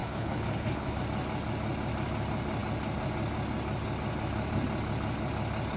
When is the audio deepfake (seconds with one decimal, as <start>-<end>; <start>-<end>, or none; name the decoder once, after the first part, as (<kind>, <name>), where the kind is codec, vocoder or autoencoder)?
0.0-1.0 (codec, HILCodec)